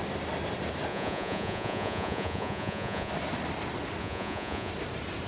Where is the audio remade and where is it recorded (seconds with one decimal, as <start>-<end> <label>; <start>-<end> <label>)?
0.0-0.9 recorded; 0.9-3.1 remade; 3.1-4.0 recorded; 4.0-4.7 remade; 4.7-5.3 recorded